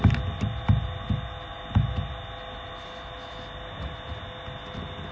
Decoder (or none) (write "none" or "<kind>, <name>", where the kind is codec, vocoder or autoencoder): none